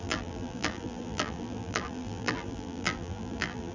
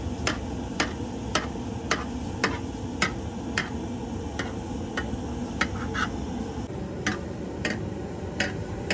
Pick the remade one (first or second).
first